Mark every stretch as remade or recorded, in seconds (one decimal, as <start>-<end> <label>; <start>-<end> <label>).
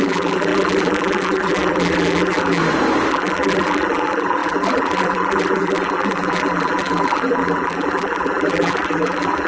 0.0-2.6 remade; 2.6-3.1 recorded; 3.1-9.5 remade